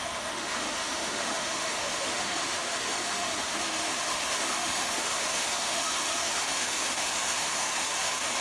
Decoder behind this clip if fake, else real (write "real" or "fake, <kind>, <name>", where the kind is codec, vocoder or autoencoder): fake, autoencoder, DAC-VAE